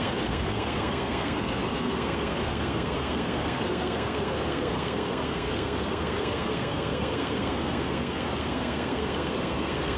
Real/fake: fake